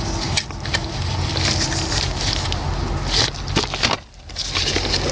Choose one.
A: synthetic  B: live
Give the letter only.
B